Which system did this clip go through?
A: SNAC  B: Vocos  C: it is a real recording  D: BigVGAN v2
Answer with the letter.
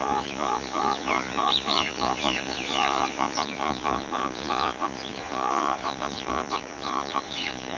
B